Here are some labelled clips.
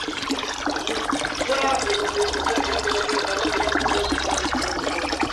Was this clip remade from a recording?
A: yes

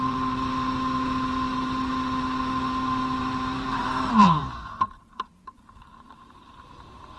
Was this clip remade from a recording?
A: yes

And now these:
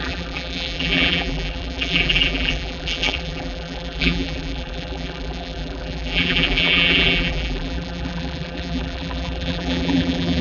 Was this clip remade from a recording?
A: yes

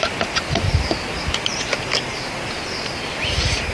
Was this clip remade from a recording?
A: no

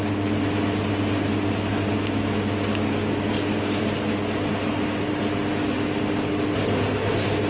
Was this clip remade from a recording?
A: no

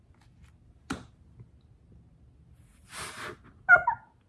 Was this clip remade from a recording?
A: no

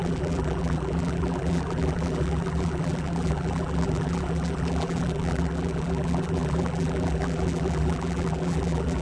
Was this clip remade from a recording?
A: yes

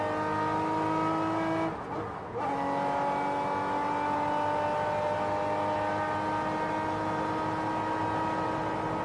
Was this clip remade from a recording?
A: no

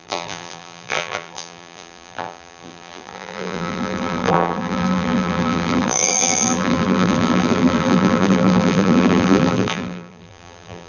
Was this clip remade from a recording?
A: yes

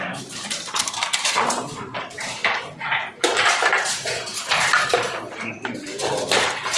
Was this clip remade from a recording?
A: yes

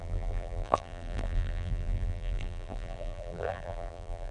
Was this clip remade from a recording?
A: yes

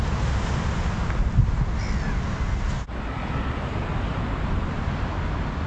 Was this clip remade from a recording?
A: no